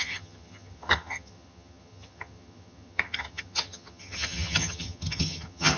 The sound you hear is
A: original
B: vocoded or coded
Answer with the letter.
B